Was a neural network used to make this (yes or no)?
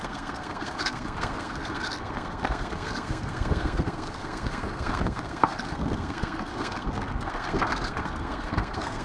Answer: yes